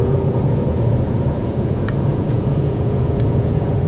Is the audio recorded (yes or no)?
no